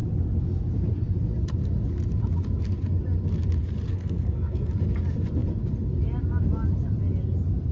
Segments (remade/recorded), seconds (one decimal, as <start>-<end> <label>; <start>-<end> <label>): 0.0-3.9 recorded; 3.9-4.7 remade; 4.7-7.7 recorded